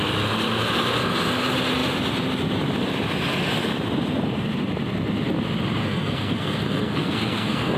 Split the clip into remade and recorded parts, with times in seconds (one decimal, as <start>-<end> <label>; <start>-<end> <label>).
0.0-5.8 recorded; 5.8-7.8 remade